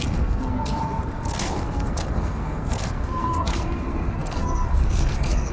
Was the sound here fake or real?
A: fake